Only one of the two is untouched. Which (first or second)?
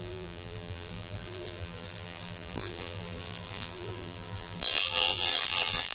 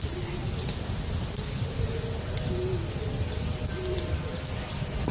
second